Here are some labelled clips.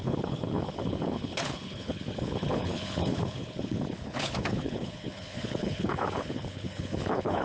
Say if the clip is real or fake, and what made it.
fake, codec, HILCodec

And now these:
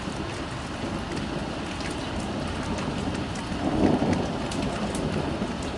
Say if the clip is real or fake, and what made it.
real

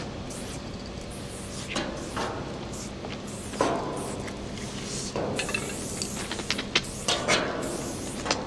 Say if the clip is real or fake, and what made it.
real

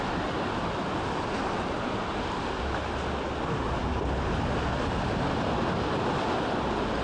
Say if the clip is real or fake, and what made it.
real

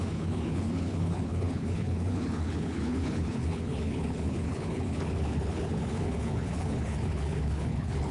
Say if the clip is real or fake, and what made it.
fake, codec, HILCodec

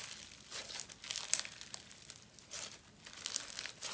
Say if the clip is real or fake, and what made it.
real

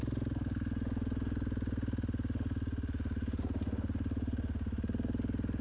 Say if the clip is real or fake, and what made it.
real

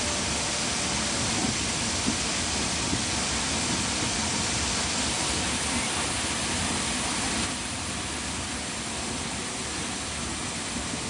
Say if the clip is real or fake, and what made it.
real